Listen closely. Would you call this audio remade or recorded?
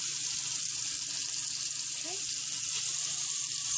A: recorded